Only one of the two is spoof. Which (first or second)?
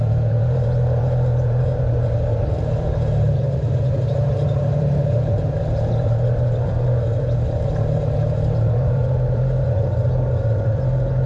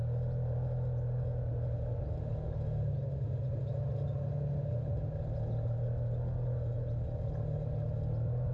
first